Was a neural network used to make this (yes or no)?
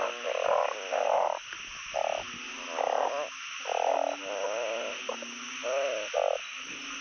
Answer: no